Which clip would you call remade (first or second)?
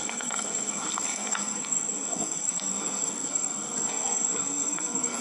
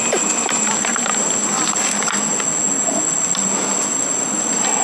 first